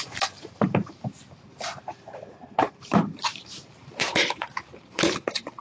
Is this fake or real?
fake